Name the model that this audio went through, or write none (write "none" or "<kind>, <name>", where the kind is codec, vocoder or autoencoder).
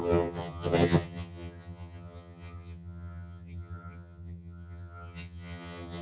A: vocoder, HiFi-GAN